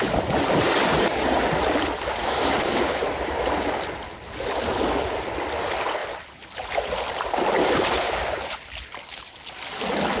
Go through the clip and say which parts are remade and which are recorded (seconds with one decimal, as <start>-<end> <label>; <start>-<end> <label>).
0.0-0.9 recorded; 0.9-1.6 remade; 1.6-2.2 recorded; 2.2-3.0 remade; 3.0-7.6 recorded; 7.6-8.4 remade; 8.4-10.2 recorded